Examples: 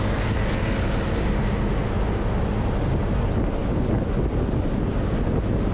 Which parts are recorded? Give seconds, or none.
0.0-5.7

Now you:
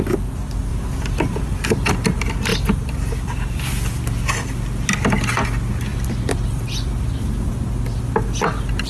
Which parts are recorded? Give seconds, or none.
0.0-0.7; 1.9-2.5; 3.7-5.9; 7.5-8.9

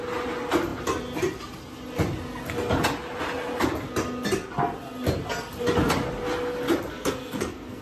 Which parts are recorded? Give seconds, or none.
0.0-6.9

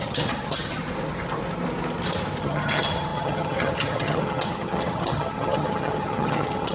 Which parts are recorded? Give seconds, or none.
0.8-2.4